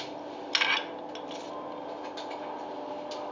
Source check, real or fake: real